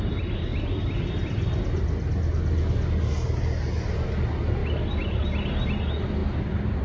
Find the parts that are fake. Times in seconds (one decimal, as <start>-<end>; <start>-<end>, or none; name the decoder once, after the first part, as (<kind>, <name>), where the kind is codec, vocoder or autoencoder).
none